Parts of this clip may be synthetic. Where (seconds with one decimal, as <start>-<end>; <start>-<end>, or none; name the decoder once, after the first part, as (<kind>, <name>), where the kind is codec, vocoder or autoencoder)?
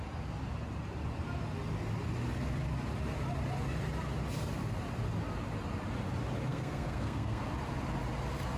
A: 6.5-7.4 (codec, SNAC)